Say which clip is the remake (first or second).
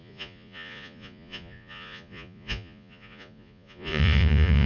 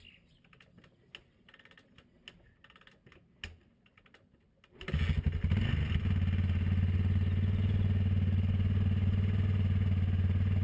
first